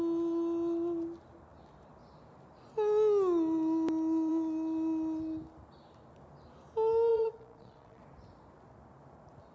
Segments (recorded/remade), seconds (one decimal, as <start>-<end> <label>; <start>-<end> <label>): 0.0-7.1 recorded; 7.1-8.0 remade; 8.0-9.5 recorded